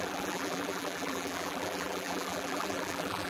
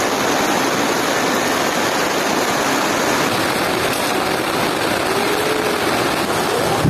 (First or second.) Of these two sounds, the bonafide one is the second